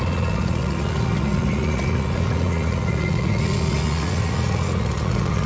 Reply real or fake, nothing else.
fake